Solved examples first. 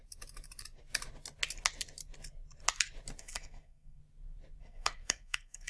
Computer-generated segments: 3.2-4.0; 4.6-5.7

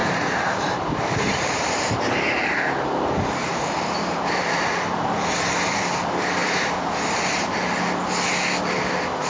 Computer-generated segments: 0.0-2.5; 3.5-4.8; 6.4-7.5

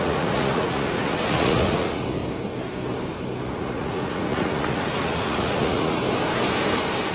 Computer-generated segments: 0.0-2.2; 3.4-6.0

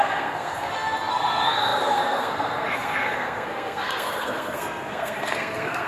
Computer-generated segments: 0.0-5.9

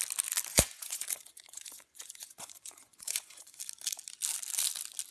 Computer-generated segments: 0.5-3.6

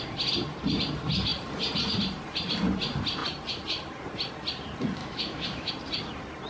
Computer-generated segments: 5.0-5.7